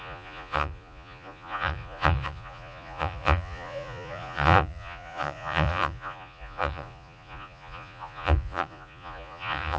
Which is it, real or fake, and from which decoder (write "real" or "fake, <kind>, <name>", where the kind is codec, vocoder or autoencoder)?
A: fake, vocoder, Vocos